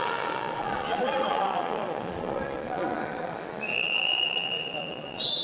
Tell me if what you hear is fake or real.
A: fake